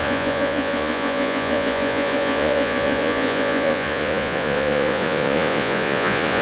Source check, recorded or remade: remade